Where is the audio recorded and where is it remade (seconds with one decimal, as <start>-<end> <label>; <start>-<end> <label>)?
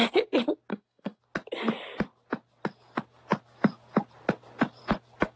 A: 0.0-0.7 recorded; 0.7-1.2 remade; 1.2-5.4 recorded